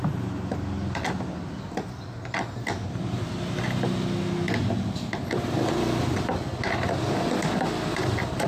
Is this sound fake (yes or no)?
no